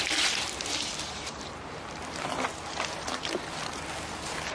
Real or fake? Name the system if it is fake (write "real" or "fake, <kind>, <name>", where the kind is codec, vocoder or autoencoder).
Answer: real